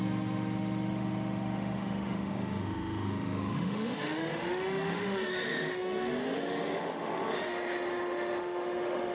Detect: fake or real fake